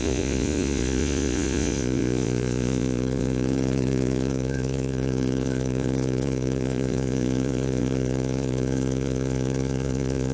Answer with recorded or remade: remade